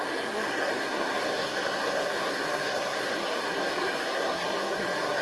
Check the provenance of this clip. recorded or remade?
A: remade